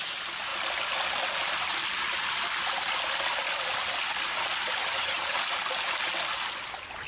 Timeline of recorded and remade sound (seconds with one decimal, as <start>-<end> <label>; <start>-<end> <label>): 0.0-4.8 recorded; 4.8-5.4 remade; 5.4-7.1 recorded

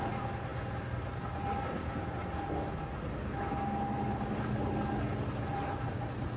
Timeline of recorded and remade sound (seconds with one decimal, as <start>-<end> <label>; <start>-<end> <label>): 0.0-6.4 recorded

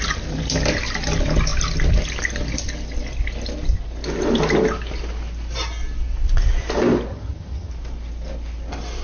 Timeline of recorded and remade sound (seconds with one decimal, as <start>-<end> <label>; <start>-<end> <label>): 0.0-7.1 recorded; 7.1-7.7 remade; 7.7-9.0 recorded

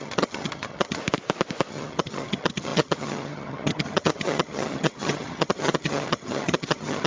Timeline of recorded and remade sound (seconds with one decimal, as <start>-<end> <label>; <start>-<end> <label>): 0.0-1.0 remade; 1.0-1.7 recorded; 1.7-7.1 remade

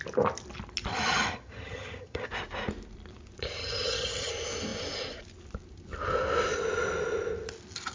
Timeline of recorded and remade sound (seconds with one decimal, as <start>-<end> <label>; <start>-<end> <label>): 0.0-0.9 recorded; 0.9-2.3 remade; 2.3-3.6 recorded; 3.6-4.3 remade; 4.3-7.9 recorded

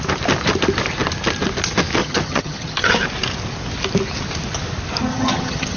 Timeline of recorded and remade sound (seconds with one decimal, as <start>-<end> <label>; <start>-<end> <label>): 0.0-2.0 recorded; 2.0-2.9 remade; 2.9-5.1 recorded; 5.1-5.8 remade